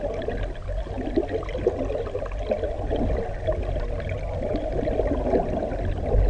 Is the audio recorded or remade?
recorded